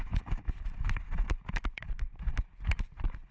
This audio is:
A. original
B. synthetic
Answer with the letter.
B